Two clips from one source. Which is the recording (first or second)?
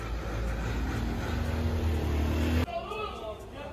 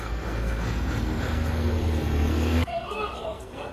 first